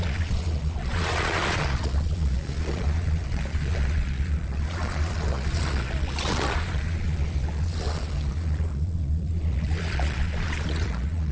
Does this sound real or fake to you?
fake